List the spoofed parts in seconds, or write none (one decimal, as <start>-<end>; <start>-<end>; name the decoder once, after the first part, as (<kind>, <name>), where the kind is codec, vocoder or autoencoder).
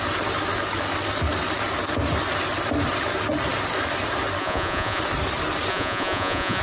4.4-5.0 (vocoder, Vocos); 5.7-6.6